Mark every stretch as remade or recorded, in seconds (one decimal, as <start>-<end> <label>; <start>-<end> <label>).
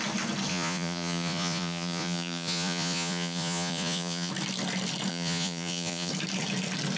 0.0-0.5 recorded; 0.5-4.3 remade; 4.3-5.1 recorded; 5.1-6.1 remade; 6.1-7.0 recorded